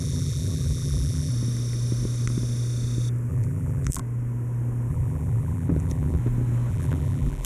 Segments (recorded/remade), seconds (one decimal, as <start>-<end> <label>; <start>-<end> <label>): 0.0-1.3 remade; 1.3-3.3 recorded; 3.3-4.0 remade; 4.0-4.9 recorded; 4.9-6.2 remade; 6.2-6.7 recorded; 6.7-7.5 remade